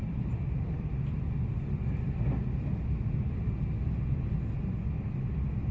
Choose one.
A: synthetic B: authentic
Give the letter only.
B